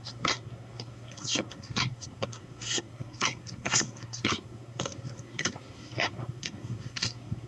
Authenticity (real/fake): fake